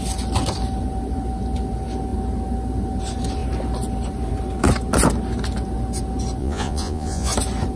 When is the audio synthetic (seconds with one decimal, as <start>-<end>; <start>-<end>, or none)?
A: 6.4-7.3